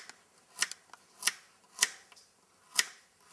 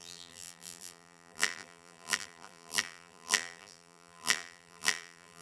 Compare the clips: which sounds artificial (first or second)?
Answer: second